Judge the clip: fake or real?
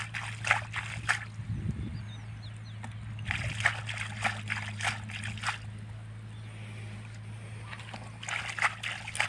real